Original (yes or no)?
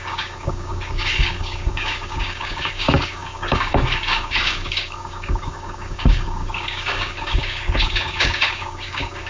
no